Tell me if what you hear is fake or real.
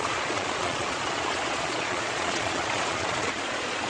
fake